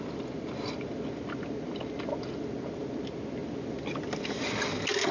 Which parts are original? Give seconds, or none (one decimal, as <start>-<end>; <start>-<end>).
0.0-5.1